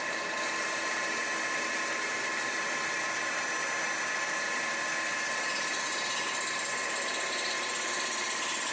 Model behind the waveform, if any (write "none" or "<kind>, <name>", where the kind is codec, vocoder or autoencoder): none